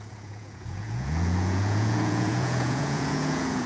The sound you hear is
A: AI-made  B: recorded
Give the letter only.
A